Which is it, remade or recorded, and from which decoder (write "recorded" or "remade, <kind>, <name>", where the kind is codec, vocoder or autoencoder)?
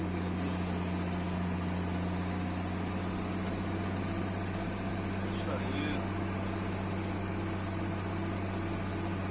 recorded